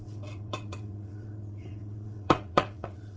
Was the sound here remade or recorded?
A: remade